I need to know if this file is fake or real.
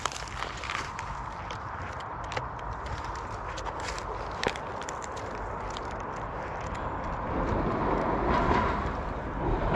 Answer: fake